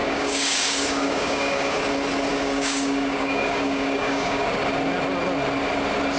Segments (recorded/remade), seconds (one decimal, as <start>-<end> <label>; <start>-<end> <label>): 0.0-1.8 remade; 1.8-2.3 recorded; 2.3-4.5 remade; 4.5-6.2 recorded